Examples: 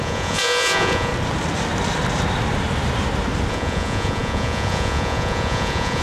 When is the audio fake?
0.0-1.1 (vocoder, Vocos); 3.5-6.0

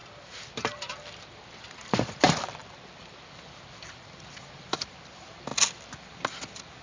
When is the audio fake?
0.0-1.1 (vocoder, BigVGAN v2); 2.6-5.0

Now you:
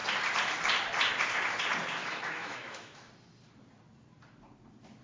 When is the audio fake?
2.0-3.1 (autoencoder, DAC-VAE)

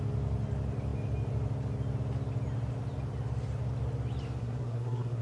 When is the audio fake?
4.4-5.2 (codec, SNAC)

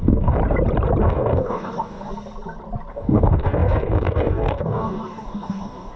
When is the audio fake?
0.0-0.4 (codec, DAC); 1.0-2.1; 2.9-6.0

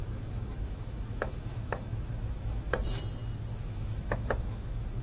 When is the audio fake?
0.0-3.0 (autoencoder, DAC-VAE); 3.5-5.0

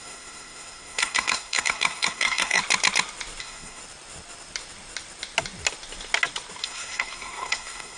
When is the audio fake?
0.0-2.6 (codec, SNAC); 3.4-3.8; 6.6-8.0

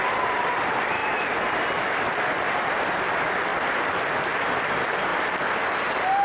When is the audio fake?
0.0-1.0 (vocoder, BigVGAN v2); 2.4-3.5; 4.6-5.1; 5.7-6.2